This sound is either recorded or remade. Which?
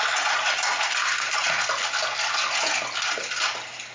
recorded